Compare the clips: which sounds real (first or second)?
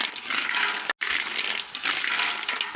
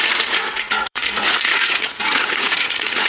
first